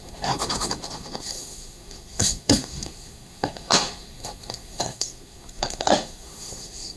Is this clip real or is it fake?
fake